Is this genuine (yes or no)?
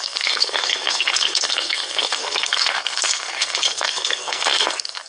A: no